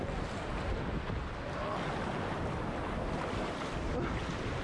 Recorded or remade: recorded